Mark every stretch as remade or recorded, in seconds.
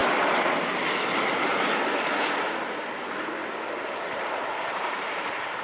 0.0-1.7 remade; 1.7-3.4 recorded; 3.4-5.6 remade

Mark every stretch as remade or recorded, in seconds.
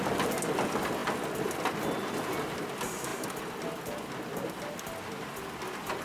0.0-6.0 recorded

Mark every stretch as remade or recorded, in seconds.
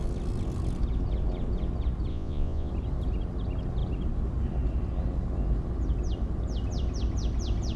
0.0-2.1 recorded; 2.1-2.7 remade; 2.7-7.8 recorded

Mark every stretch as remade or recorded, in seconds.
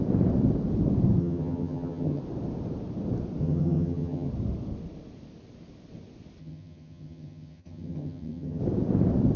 0.0-1.2 recorded; 1.2-2.2 remade; 2.2-3.4 recorded; 3.4-4.3 remade; 4.3-6.4 recorded; 6.4-8.6 remade; 8.6-9.4 recorded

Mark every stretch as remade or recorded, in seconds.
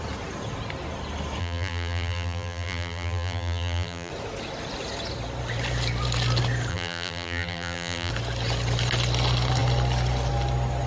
0.0-1.4 recorded; 1.4-4.1 remade; 4.1-6.7 recorded; 6.7-8.1 remade; 8.1-10.9 recorded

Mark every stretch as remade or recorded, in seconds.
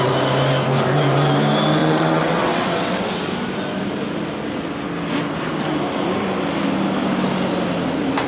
0.0-1.8 recorded; 1.8-3.1 remade; 3.1-8.3 recorded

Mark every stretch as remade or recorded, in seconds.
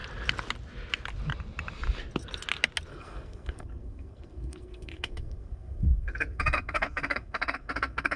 0.0-2.9 recorded; 2.9-8.2 remade